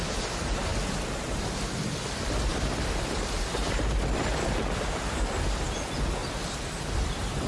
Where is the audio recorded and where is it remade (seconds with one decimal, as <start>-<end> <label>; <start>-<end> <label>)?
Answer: 0.0-2.5 recorded; 2.5-4.3 remade; 4.3-6.2 recorded; 6.2-7.5 remade